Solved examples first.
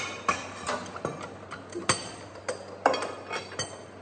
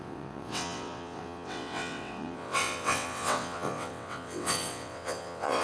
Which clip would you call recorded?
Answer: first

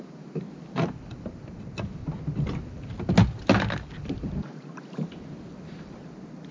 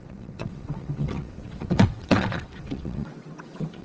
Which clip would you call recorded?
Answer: first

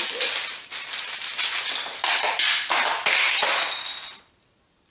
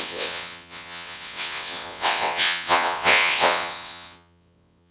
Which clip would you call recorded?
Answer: first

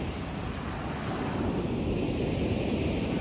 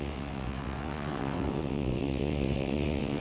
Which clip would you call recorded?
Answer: first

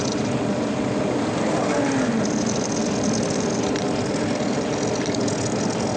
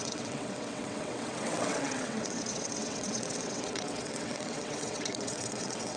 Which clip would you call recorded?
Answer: first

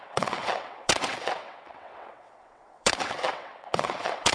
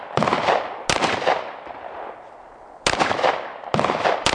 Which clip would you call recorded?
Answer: second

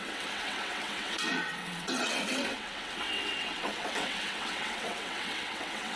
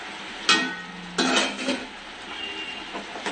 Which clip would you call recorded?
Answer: second